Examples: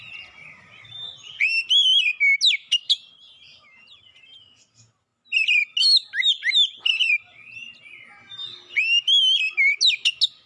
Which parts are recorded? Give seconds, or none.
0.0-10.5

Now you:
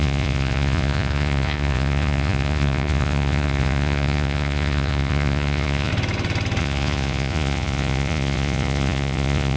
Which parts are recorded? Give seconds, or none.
5.9-6.6

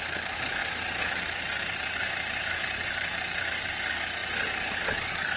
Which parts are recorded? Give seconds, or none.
0.0-0.6; 3.7-5.4

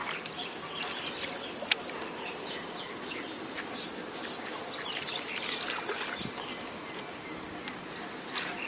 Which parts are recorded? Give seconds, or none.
0.0-8.7

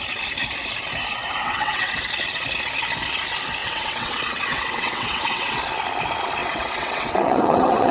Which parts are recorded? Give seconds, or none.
0.0-1.4; 1.9-3.6; 5.6-6.4

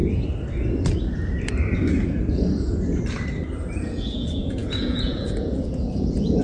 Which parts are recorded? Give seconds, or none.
0.0-3.7

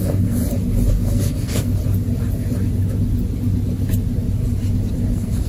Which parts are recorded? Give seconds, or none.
0.4-0.9; 1.8-5.1

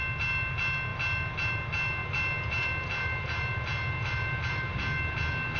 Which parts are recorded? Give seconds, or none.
0.0-5.6